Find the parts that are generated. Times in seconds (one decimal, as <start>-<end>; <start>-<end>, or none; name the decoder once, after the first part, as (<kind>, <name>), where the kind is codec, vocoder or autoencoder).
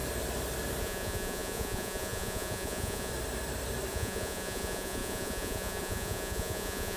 0.8-3.1 (vocoder, Vocos); 3.9-7.0